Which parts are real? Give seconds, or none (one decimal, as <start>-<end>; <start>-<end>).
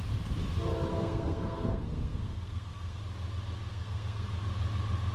0.0-0.9; 3.0-3.7; 4.4-5.1